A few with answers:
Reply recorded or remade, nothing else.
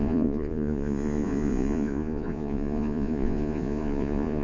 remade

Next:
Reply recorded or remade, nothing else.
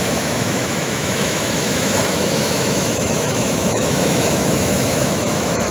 remade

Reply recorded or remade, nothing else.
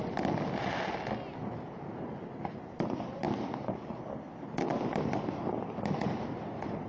recorded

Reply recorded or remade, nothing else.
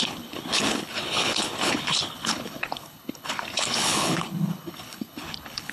remade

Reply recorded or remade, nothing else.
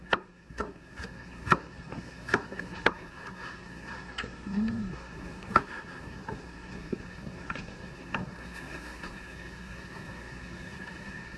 remade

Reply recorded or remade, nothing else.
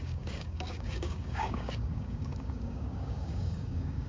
remade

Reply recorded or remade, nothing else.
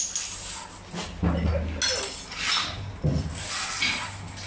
recorded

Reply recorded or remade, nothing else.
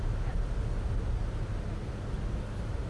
recorded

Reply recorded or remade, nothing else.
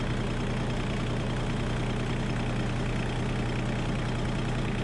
recorded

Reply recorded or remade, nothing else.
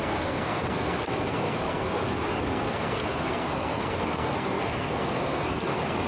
remade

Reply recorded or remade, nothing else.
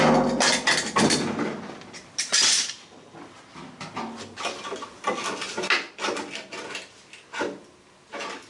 recorded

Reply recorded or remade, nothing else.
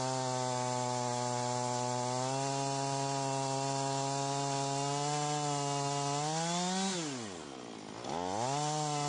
recorded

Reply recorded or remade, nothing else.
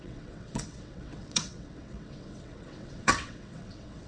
remade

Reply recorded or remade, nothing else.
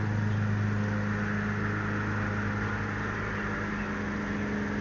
recorded